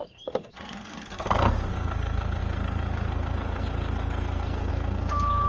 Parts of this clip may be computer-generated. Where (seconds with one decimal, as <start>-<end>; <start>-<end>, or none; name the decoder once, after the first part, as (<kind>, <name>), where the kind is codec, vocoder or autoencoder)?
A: 0.0-5.5 (codec, SNAC)

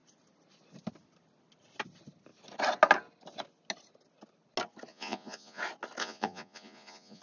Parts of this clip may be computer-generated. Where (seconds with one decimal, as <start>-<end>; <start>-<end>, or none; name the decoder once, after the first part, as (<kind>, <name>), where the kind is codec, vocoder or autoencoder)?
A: 4.9-5.6 (vocoder, Vocos); 6.0-7.2

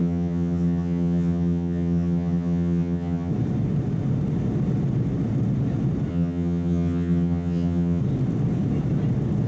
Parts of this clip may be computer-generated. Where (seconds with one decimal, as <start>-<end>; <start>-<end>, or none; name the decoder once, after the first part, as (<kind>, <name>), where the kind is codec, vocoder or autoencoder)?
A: 0.0-3.3 (vocoder, HiFi-GAN); 6.1-8.0

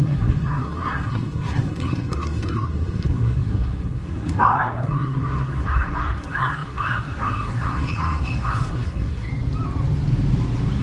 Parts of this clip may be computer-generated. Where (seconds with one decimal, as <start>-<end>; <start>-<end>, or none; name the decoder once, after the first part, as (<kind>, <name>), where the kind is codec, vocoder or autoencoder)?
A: 0.0-9.3 (codec, SNAC)

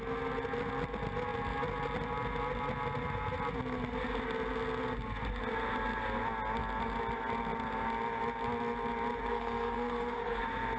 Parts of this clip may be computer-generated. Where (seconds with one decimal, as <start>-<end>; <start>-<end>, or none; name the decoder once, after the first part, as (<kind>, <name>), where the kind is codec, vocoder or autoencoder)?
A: 9.3-10.4 (codec, SNAC)